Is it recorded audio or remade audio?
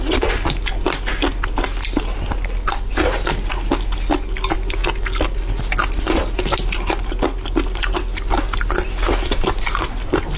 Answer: recorded